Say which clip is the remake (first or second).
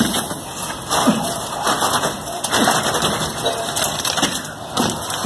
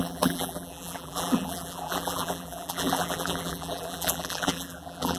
second